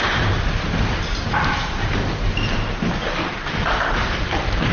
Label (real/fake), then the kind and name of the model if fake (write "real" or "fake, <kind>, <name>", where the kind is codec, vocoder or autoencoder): fake, vocoder, BigVGAN v2